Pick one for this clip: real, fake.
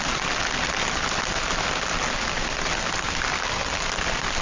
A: real